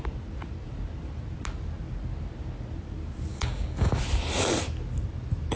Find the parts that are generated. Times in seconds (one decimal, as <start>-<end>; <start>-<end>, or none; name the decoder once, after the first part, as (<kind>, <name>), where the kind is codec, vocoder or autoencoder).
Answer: 3.3-4.0 (codec, DAC)